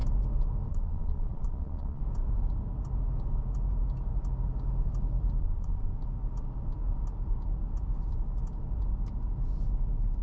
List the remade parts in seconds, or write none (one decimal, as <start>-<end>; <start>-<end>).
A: 0.7-2.0; 5.4-5.9